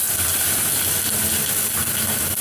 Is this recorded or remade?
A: recorded